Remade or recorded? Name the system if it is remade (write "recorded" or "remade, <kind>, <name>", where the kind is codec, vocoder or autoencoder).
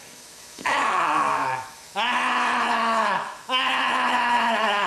remade, autoencoder, DAC-VAE